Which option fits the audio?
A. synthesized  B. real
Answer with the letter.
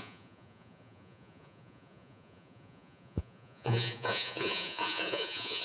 A